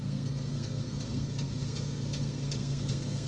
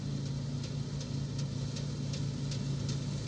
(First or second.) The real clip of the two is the second